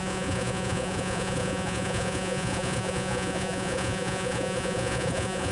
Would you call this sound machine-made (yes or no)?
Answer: yes